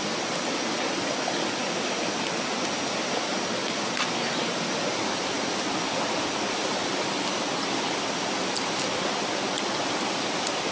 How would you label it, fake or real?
real